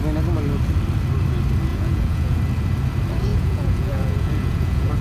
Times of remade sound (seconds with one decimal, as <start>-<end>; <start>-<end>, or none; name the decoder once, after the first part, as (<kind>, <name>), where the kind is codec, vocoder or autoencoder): 1.7-2.4 (vocoder, Vocos); 3.3-5.0